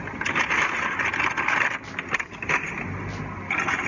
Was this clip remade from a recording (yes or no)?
no